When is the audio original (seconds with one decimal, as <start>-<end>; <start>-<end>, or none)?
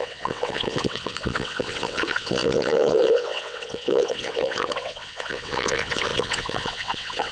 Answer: none